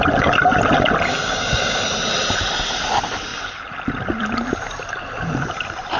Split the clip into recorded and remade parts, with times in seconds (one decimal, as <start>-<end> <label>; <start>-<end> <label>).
0.0-1.1 recorded; 1.1-1.8 remade; 1.8-6.0 recorded